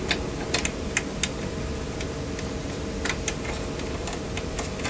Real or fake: real